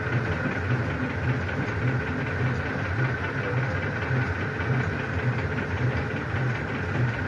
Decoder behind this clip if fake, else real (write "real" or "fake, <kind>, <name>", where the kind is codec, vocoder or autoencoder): real